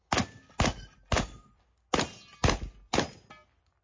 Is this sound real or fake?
real